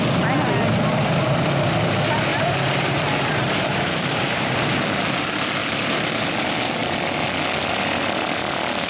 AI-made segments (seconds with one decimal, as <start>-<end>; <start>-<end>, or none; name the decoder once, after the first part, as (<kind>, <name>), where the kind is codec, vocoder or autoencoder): 2.3-4.5 (vocoder, BigVGAN v2); 5.6-6.3